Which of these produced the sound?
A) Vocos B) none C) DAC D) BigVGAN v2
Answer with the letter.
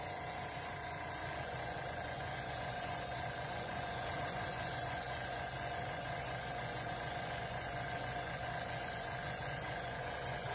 A